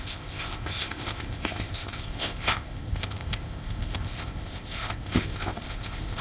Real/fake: fake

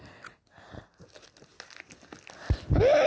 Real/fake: real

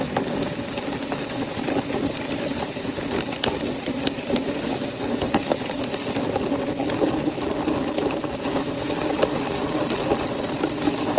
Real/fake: real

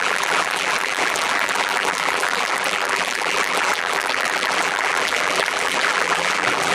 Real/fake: fake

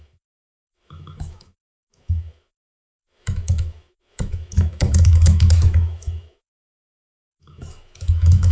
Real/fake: fake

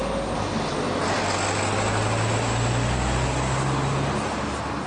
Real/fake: real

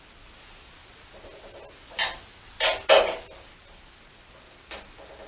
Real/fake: real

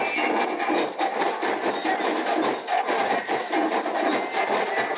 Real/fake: real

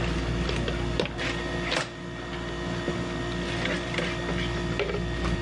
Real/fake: real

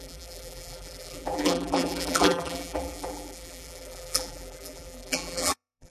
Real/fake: fake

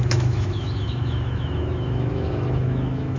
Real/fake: fake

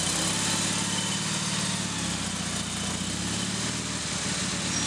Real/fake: real